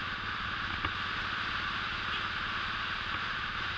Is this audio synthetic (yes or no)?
no